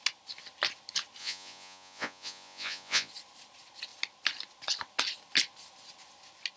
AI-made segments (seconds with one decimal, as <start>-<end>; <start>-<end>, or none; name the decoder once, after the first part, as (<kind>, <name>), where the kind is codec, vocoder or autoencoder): 1.2-3.1 (vocoder, Vocos)